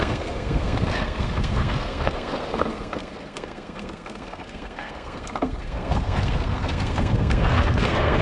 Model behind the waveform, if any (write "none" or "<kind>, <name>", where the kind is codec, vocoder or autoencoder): codec, SNAC